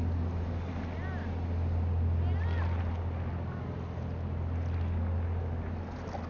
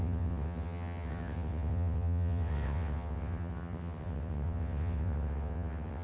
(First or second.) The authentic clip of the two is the first